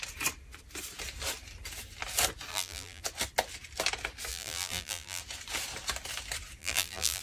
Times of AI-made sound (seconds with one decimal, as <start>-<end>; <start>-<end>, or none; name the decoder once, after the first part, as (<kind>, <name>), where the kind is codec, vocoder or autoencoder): 2.5-3.0 (vocoder, BigVGAN v2); 4.3-5.2; 6.6-7.2